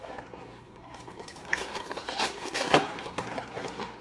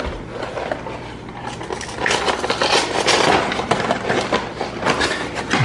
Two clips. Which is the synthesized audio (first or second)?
first